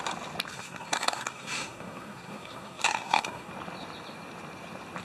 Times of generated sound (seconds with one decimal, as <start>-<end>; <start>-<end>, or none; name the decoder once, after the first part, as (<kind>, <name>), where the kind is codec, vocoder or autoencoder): 0.5-3.5 (codec, SNAC)